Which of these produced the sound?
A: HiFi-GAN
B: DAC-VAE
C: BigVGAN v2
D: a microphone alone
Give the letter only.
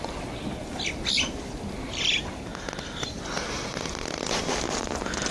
D